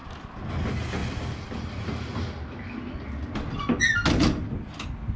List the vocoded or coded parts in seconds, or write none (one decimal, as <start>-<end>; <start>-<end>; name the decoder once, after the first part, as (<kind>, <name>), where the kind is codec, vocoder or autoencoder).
none